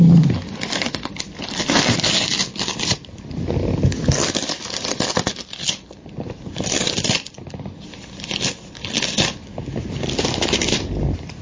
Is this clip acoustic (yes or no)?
yes